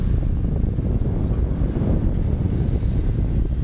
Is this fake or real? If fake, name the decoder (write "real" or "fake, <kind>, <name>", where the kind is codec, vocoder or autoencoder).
real